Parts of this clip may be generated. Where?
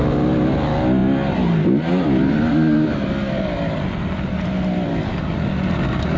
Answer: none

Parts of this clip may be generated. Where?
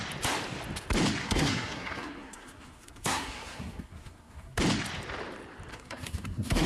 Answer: 1.2-4.6; 5.7-6.7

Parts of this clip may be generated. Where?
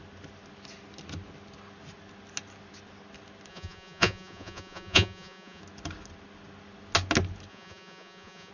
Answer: 3.5-5.6; 7.5-8.5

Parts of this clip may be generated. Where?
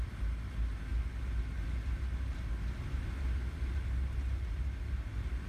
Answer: none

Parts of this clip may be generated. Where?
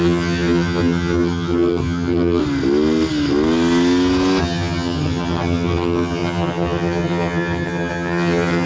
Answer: 0.0-2.4; 4.4-8.7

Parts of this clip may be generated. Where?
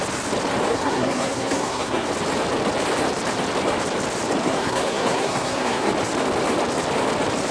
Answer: 0.7-2.1; 4.4-5.9